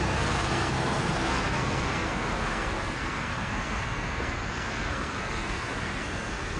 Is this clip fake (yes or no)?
yes